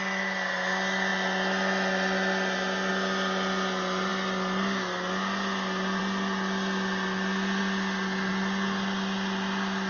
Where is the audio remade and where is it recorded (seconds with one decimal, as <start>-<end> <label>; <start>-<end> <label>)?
0.0-9.9 recorded